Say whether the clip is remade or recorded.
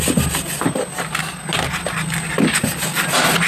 recorded